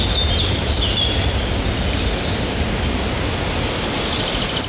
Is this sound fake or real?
real